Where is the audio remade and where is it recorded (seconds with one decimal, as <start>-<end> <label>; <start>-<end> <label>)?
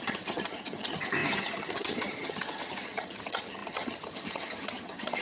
0.0-5.2 remade